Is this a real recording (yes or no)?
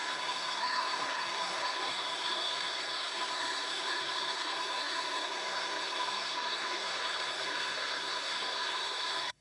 no